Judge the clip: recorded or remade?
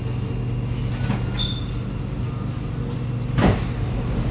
recorded